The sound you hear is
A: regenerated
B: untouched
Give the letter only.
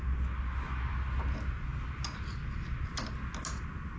B